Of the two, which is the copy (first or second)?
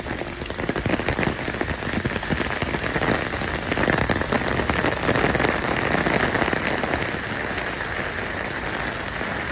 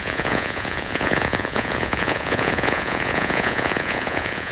second